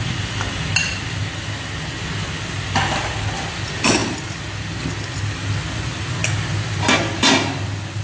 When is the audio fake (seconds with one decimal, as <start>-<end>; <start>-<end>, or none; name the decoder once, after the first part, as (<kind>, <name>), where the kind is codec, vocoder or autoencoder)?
0.8-1.4 (vocoder, BigVGAN v2); 4.0-4.8